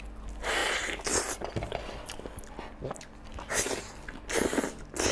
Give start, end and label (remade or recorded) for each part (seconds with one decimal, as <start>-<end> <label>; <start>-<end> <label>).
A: 0.0-5.1 recorded